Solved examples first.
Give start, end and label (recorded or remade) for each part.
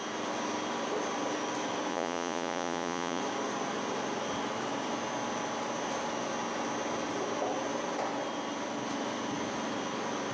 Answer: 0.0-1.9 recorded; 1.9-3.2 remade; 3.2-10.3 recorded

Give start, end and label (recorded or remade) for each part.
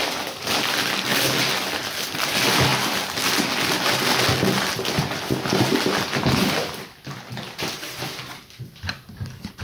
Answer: 0.0-5.7 recorded; 5.7-9.6 remade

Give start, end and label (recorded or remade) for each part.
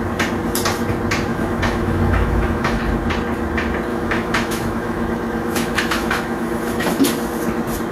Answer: 0.0-1.3 recorded; 1.3-2.8 remade; 2.8-3.9 recorded; 3.9-7.0 remade; 7.0-7.9 recorded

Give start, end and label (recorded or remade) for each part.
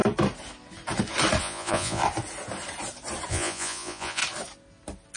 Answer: 0.0-1.4 recorded; 1.4-2.0 remade; 2.0-3.3 recorded; 3.3-4.2 remade; 4.2-5.2 recorded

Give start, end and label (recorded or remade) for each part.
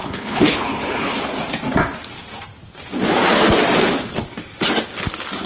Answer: 0.0-1.2 remade; 1.2-5.5 recorded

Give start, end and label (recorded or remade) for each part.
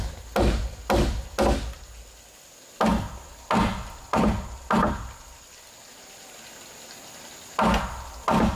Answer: 0.0-8.6 recorded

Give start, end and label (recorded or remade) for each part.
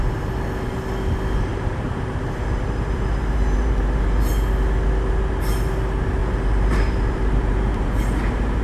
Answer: 0.0-1.5 recorded; 1.5-4.3 remade; 4.3-6.2 recorded; 6.2-8.6 remade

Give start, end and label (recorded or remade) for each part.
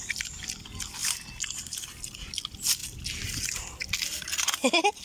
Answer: 0.0-5.0 recorded